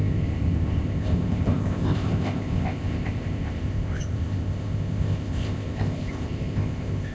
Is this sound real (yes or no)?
no